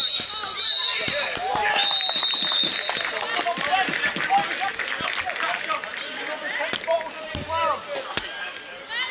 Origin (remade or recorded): recorded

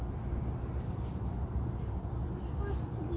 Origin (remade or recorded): recorded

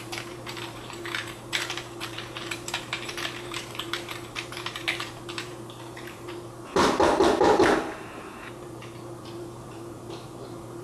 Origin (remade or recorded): remade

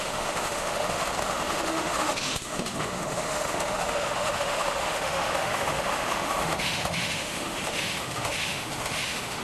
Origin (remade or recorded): remade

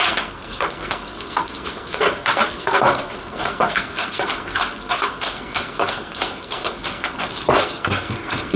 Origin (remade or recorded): remade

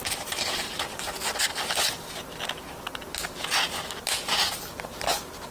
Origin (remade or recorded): recorded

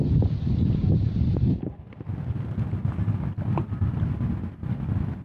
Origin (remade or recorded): recorded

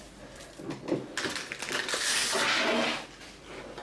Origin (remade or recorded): recorded